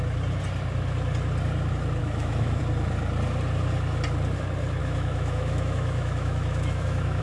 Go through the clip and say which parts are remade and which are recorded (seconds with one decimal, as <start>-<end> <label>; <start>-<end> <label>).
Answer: 0.0-2.0 recorded; 2.0-2.6 remade; 2.6-4.8 recorded; 4.8-7.2 remade